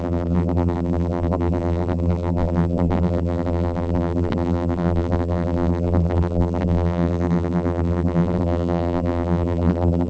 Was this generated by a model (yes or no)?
yes